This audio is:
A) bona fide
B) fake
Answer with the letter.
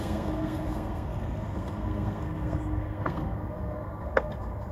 B